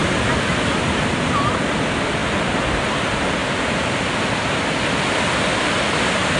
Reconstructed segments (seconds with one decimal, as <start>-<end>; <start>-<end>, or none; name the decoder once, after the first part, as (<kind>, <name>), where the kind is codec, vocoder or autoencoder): 0.0-1.0 (vocoder, BigVGAN v2); 3.4-4.0; 5.5-6.4